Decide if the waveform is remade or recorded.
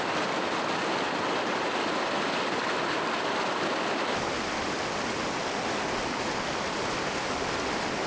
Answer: recorded